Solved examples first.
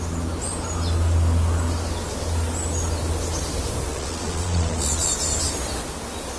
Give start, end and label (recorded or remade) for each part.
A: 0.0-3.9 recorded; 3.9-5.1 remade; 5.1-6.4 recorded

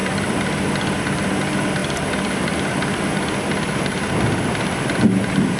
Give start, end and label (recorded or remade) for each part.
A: 0.0-5.6 recorded